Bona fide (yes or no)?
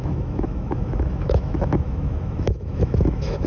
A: no